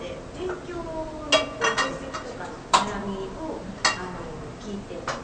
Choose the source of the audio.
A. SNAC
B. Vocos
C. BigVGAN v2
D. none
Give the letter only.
D